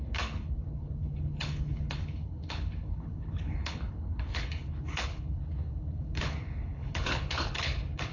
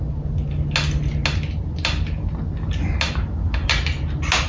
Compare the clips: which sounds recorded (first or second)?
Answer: second